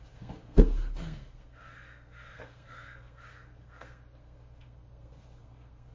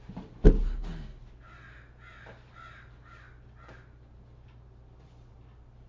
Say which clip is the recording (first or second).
second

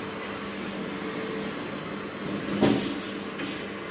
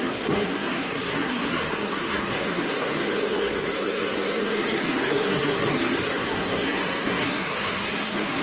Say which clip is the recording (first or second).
first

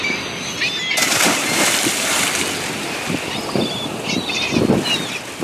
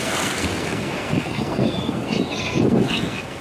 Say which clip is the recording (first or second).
first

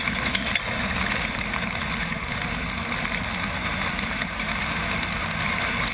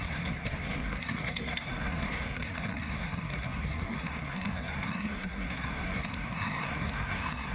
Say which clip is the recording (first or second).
first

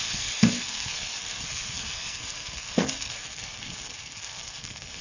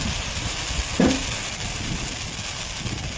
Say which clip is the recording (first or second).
second